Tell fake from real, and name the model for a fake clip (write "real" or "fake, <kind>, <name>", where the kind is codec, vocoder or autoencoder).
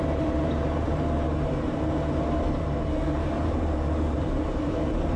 fake, vocoder, BigVGAN v2